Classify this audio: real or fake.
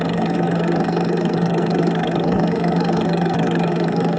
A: fake